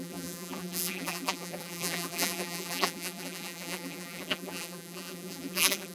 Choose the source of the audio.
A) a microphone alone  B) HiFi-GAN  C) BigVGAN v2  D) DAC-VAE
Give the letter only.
C